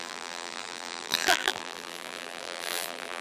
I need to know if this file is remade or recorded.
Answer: remade